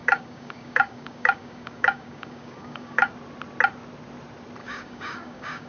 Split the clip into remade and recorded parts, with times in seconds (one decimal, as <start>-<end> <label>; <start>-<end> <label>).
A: 0.0-3.1 remade; 3.1-4.6 recorded; 4.6-5.7 remade